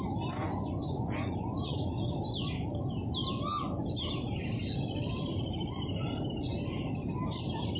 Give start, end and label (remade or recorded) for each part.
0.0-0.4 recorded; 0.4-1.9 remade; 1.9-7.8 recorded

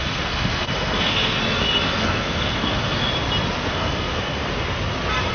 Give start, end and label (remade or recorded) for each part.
0.0-1.4 remade; 1.4-2.0 recorded; 2.0-3.1 remade; 3.1-3.7 recorded; 3.7-4.4 remade; 4.4-5.3 recorded

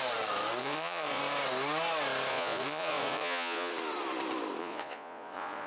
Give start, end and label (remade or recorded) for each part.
0.0-0.6 recorded; 0.6-1.2 remade; 1.2-2.3 recorded; 2.3-3.7 remade; 3.7-4.6 recorded; 4.6-5.7 remade

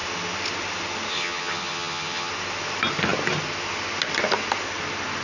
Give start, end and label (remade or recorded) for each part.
0.0-1.1 recorded; 1.1-2.3 remade; 2.3-5.2 recorded